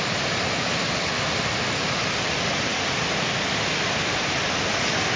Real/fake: real